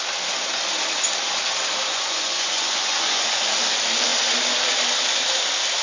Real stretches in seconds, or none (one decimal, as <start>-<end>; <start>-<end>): 0.0-1.9; 3.4-5.8